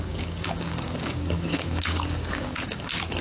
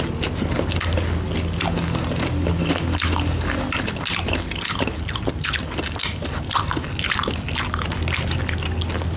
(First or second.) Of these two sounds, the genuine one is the second